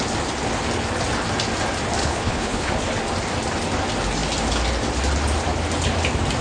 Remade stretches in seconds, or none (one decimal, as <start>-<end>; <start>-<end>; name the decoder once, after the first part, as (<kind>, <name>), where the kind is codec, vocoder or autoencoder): 2.0-2.7 (codec, HILCodec)